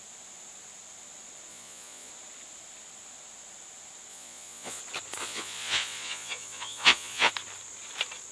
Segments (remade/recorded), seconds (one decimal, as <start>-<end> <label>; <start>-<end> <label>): 0.0-1.5 recorded; 1.5-2.1 remade; 2.1-4.1 recorded; 4.1-4.8 remade; 4.8-5.2 recorded; 5.2-7.3 remade; 7.3-8.3 recorded